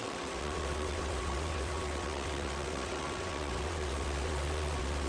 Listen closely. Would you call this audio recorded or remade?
remade